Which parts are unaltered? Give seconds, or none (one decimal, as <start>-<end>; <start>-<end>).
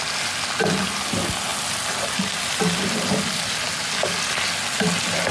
0.0-5.3